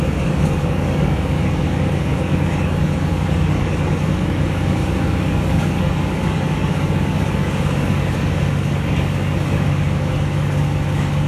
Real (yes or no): no